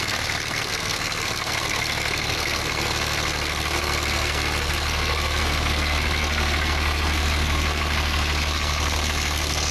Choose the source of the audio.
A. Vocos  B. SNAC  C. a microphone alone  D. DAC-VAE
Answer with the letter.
B